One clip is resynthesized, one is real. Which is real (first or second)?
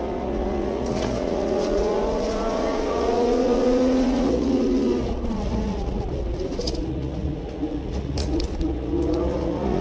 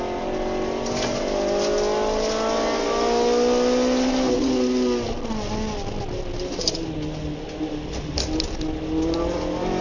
second